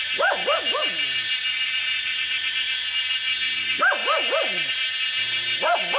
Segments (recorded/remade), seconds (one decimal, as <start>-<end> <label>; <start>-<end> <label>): 0.0-6.0 recorded